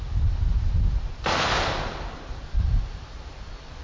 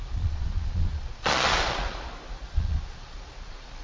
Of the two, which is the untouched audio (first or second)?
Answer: first